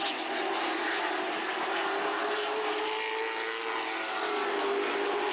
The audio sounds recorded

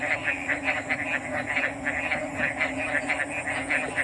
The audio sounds recorded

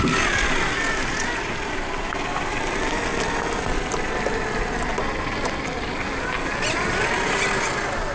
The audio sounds recorded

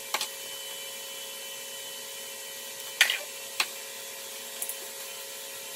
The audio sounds recorded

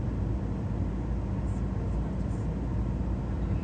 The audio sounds recorded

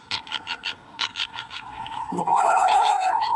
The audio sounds remade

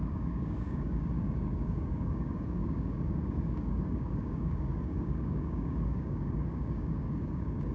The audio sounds remade